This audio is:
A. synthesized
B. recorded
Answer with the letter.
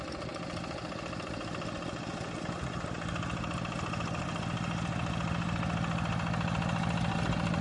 B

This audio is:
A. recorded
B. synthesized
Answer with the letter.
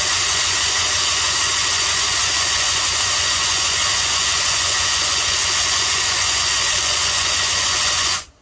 B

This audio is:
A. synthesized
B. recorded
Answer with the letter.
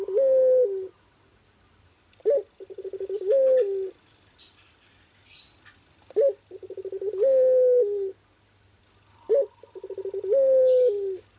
B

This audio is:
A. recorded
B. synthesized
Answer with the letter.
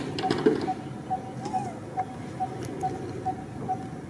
A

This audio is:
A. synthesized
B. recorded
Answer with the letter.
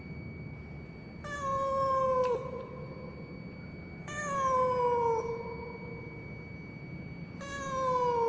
B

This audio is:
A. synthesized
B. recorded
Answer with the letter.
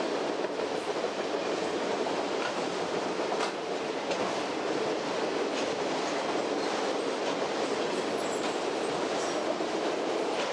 B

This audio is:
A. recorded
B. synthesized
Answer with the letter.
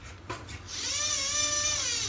A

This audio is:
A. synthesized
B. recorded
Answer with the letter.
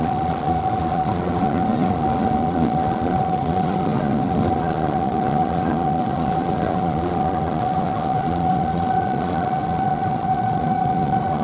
A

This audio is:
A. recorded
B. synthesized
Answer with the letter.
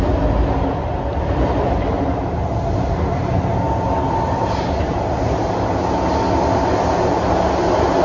A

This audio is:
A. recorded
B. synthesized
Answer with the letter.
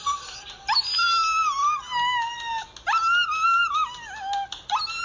A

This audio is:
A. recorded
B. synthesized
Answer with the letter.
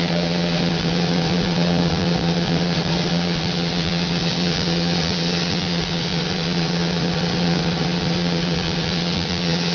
B